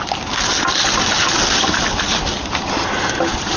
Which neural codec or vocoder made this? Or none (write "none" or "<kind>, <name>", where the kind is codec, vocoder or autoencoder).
none